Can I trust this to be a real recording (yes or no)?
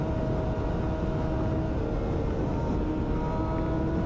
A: yes